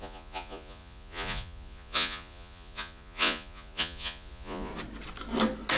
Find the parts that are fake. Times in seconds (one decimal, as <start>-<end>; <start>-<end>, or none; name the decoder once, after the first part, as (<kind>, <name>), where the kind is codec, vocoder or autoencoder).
0.0-4.7 (vocoder, Vocos)